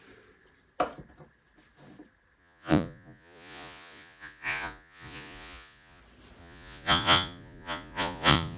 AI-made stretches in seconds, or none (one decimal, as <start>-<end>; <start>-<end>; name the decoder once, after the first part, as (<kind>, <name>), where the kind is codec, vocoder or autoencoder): 2.4-6.0 (vocoder, Vocos); 6.4-8.6